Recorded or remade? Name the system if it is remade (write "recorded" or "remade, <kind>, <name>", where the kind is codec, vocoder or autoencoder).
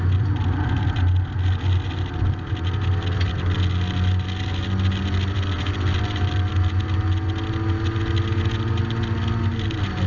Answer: recorded